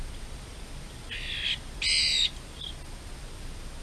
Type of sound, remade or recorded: recorded